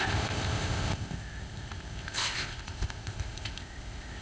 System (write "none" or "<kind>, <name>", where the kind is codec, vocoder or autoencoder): codec, ZipCodec